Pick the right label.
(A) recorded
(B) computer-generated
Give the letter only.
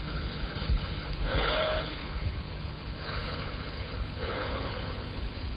B